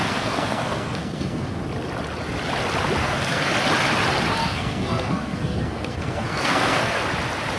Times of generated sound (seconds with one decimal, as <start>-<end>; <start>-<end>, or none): 0.0-1.6; 3.0-3.5; 4.4-7.0